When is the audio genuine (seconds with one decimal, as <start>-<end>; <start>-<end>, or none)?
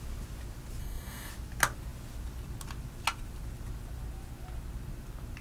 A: 0.0-0.8; 1.3-5.4